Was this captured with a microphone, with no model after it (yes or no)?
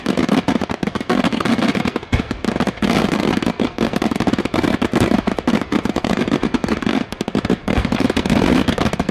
no